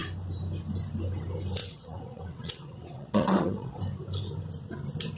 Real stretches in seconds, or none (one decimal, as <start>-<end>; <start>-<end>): 0.0-1.6; 3.8-5.2